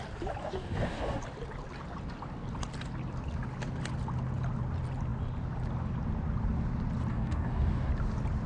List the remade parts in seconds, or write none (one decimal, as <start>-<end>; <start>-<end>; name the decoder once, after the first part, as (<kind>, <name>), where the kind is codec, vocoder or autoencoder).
0.4-1.2 (codec, DAC); 7.1-7.9